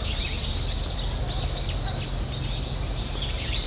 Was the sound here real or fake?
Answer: real